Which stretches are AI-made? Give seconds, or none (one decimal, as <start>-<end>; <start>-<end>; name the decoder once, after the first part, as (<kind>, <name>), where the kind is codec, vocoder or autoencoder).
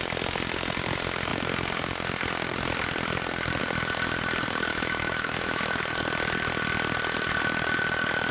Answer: 4.7-5.6 (autoencoder, DAC-VAE)